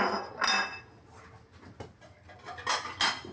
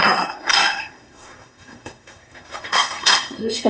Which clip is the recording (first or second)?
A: first